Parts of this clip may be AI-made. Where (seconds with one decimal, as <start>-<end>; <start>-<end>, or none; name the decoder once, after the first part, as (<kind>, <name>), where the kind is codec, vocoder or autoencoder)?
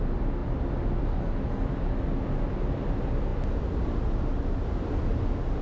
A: none